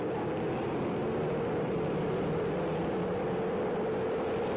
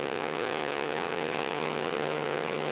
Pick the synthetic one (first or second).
second